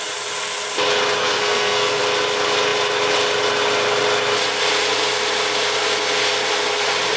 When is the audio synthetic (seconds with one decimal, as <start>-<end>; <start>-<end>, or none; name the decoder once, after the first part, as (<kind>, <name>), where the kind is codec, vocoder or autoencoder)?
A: 1.2-2.0 (codec, SNAC)